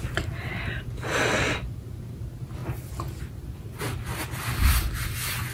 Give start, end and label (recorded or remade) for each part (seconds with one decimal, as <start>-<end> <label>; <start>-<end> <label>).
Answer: 0.0-0.5 remade; 0.5-5.5 recorded